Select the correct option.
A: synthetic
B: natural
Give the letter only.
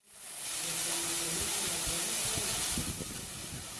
B